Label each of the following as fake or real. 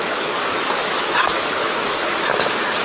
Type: fake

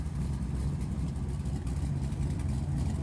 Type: real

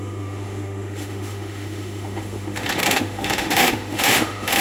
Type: fake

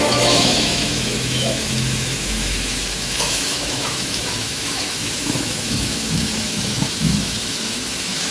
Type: fake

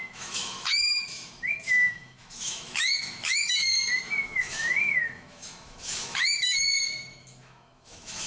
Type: fake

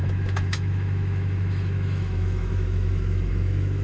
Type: fake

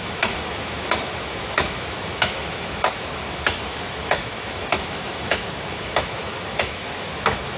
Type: fake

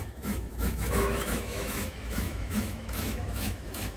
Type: fake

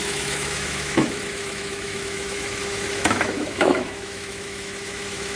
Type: fake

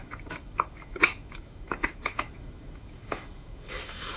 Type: fake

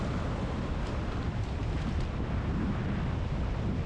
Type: real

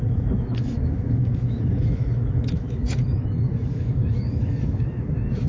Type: fake